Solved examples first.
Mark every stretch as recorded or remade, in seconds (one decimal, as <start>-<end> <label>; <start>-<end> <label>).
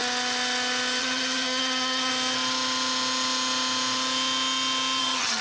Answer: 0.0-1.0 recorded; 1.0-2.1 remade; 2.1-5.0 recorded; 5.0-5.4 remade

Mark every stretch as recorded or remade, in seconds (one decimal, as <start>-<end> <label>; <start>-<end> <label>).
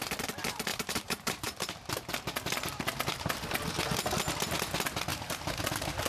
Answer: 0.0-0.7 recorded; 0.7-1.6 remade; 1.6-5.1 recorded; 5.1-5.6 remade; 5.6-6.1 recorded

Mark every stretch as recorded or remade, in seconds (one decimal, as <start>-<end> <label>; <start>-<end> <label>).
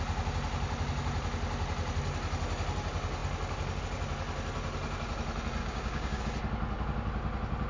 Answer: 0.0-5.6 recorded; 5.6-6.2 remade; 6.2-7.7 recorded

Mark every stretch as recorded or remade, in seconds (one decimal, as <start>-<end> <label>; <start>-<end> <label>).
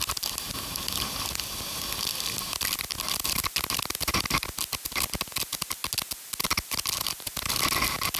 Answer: 0.0-8.2 recorded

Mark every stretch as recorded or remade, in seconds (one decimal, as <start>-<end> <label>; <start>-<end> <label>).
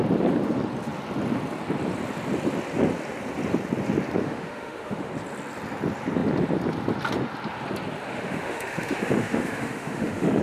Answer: 0.0-4.2 recorded; 4.2-5.1 remade; 5.1-8.1 recorded; 8.1-10.4 remade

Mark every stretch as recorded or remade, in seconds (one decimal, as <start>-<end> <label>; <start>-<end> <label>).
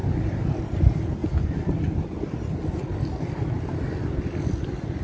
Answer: 0.0-0.6 remade; 0.6-5.0 recorded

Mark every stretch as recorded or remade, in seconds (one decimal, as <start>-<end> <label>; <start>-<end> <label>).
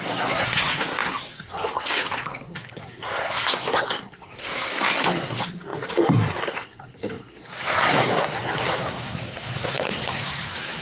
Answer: 0.0-10.8 remade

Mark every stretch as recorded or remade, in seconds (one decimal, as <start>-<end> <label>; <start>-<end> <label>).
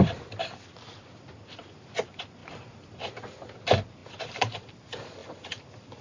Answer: 0.0-6.0 recorded